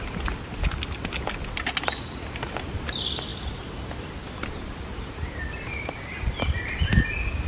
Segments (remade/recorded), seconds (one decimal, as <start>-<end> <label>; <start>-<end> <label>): 0.0-7.5 recorded

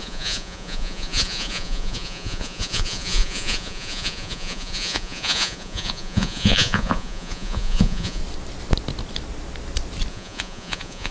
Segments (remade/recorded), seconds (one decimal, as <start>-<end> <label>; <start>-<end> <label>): 0.0-8.2 remade; 8.2-10.1 recorded; 10.1-11.1 remade